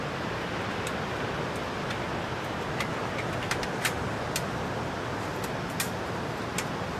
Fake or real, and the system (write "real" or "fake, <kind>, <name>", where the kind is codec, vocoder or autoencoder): real